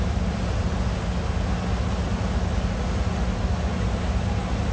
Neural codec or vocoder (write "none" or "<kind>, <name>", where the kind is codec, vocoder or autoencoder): none